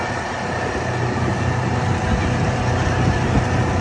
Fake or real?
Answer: real